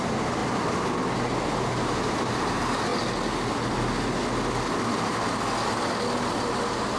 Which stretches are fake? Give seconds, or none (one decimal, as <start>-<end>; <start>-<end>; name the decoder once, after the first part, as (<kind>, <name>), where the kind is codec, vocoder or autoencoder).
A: none